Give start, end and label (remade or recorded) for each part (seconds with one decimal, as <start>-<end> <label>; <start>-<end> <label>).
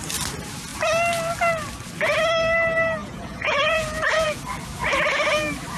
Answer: 0.0-3.0 recorded; 3.0-4.4 remade; 4.4-5.8 recorded